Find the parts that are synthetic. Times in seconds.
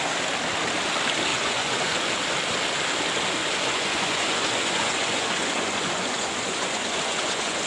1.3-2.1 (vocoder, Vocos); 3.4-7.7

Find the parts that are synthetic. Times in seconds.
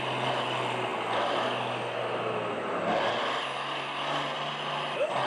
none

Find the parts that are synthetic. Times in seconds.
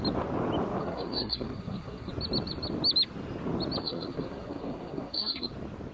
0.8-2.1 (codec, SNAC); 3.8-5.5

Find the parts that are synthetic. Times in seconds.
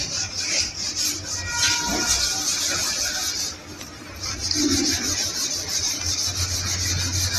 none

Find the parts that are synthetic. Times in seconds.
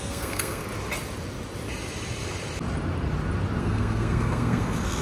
0.0-0.6 (codec, SNAC); 3.6-5.0